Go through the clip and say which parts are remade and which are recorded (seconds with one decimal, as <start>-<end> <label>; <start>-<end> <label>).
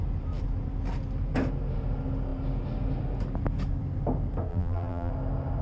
0.0-4.5 recorded; 4.5-5.1 remade; 5.1-5.6 recorded